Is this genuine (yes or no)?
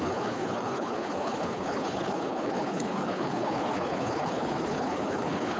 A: no